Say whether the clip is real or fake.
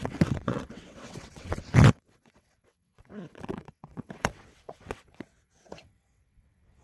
fake